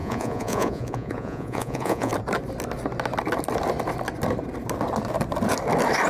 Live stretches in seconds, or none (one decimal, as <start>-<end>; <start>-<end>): 2.1-6.1